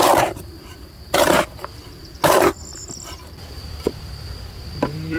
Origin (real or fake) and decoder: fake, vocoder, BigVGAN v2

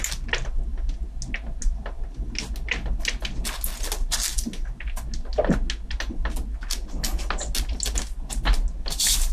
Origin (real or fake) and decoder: real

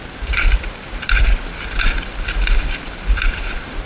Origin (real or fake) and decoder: fake, vocoder, BigVGAN v2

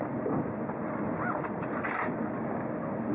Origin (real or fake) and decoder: real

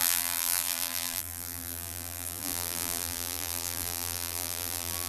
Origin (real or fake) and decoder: fake, vocoder, BigVGAN v2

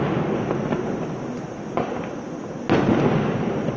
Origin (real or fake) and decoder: real